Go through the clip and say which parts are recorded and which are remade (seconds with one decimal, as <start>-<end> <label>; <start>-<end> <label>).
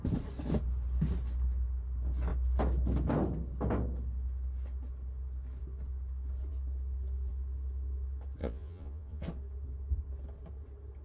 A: 0.0-8.4 recorded; 8.4-9.2 remade; 9.2-11.0 recorded